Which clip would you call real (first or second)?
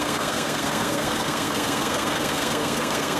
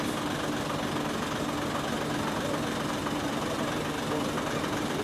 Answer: second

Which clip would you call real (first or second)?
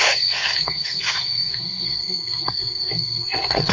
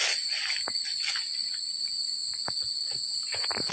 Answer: second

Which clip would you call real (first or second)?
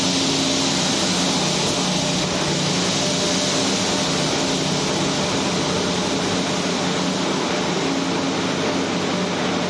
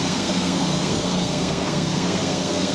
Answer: first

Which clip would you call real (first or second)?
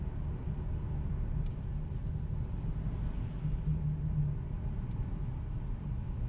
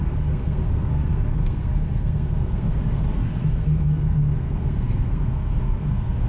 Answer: first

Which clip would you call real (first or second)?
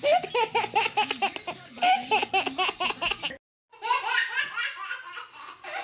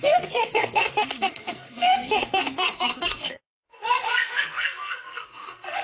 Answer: first